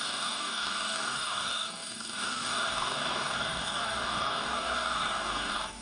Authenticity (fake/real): fake